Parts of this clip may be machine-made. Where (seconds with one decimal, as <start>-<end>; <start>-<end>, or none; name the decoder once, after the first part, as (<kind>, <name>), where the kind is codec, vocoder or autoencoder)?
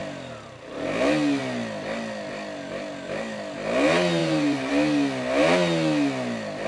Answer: 4.2-4.7 (vocoder, BigVGAN v2)